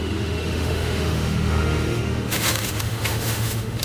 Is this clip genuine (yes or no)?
no